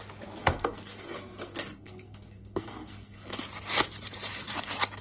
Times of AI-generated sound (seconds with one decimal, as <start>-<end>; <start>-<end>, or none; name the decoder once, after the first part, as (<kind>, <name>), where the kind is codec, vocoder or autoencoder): 0.4-3.4 (codec, SNAC)